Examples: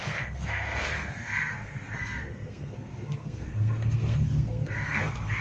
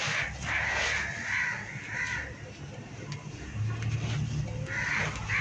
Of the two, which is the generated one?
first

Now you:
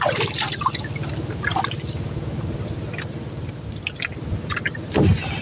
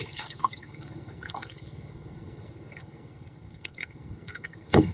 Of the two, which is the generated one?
second